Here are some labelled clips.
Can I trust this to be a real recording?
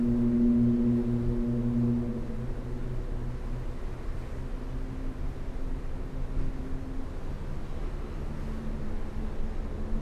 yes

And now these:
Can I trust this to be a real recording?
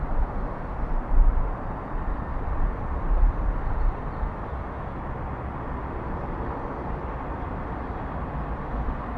no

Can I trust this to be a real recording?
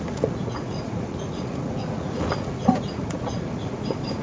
no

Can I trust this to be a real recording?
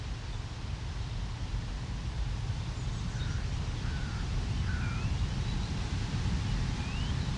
yes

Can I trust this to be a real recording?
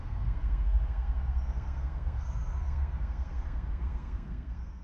no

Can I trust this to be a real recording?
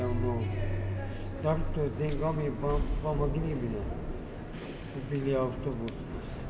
yes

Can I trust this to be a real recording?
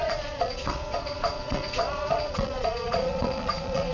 no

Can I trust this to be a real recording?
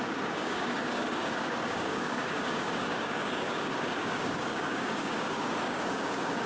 no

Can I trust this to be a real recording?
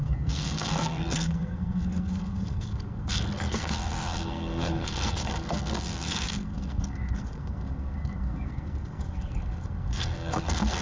no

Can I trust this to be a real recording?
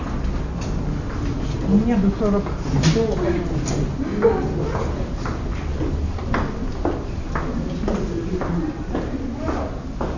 yes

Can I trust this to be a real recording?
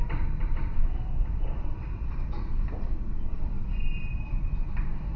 no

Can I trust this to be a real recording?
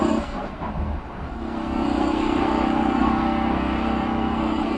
no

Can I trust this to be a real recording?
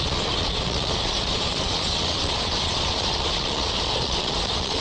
no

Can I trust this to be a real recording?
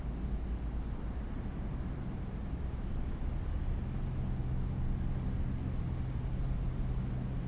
yes